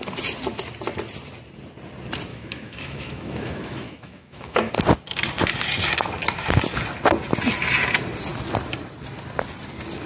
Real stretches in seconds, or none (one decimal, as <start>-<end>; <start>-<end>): 0.0-2.3; 4.7-10.1